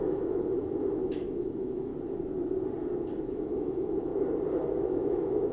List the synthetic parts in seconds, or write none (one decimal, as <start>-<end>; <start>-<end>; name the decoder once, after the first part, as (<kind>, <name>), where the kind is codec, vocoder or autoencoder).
0.0-1.9 (autoencoder, DAC-VAE); 3.2-4.1; 4.7-5.5